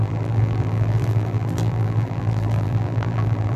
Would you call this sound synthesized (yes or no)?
yes